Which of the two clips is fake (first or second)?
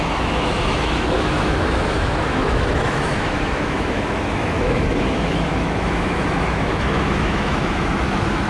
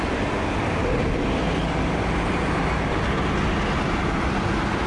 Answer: first